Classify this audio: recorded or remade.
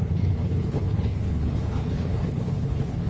remade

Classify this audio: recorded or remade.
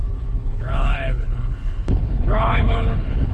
remade